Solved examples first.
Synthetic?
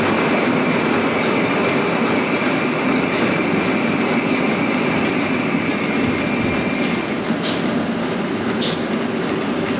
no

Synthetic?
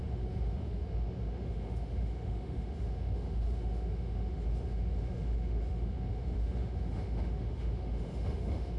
yes